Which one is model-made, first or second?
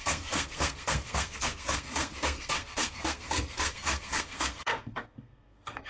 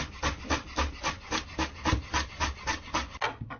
first